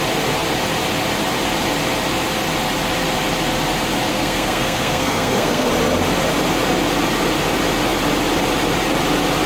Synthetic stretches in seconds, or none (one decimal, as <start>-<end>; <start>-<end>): 4.1-5.7